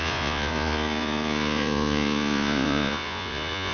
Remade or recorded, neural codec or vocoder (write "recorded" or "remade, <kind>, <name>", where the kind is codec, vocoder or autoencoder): remade, vocoder, Vocos